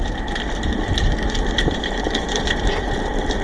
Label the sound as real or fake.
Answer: fake